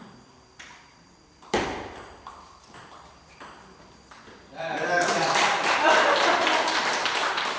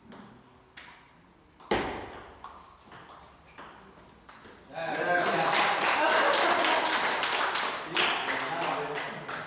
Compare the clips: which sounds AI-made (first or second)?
first